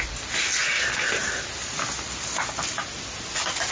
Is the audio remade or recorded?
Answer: recorded